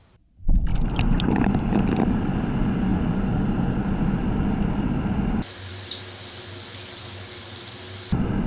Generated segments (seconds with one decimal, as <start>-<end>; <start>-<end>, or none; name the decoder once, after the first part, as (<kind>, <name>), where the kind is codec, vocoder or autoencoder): none